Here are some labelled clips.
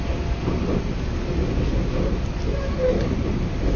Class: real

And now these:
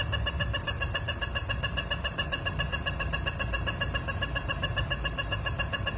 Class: real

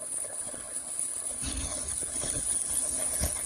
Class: fake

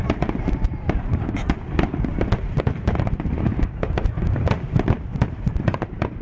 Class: fake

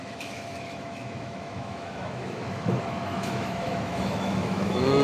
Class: fake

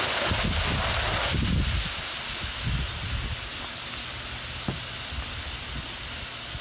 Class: real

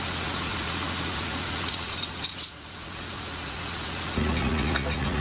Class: fake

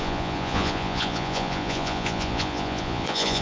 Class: fake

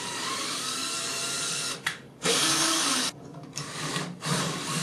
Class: fake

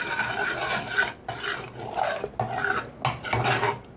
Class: real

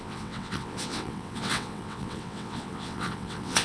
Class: fake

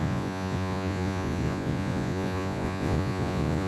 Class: fake